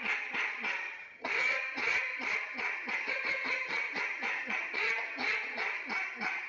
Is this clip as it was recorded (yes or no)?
no